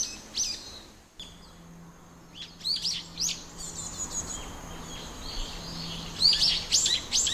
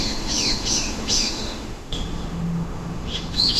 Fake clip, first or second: second